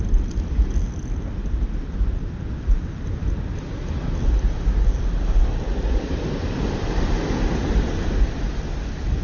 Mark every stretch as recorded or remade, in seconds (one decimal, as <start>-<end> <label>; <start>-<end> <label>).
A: 0.0-2.2 recorded; 2.2-3.3 remade; 3.3-9.2 recorded